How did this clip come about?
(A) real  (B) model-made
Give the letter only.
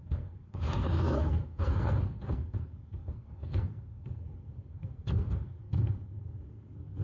B